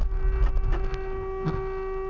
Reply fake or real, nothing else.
real